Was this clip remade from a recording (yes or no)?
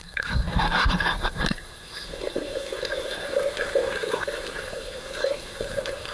yes